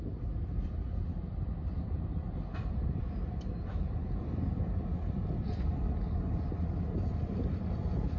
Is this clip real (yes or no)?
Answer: yes